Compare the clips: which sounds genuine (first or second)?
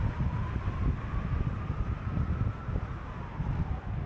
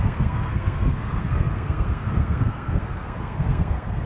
first